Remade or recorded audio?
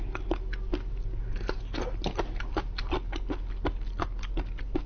recorded